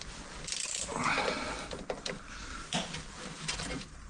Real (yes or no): yes